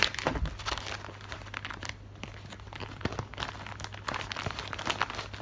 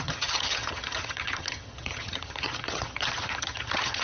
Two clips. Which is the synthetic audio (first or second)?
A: second